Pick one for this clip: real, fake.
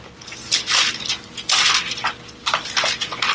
real